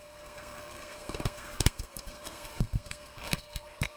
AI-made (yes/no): yes